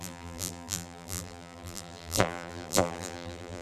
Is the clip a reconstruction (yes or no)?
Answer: yes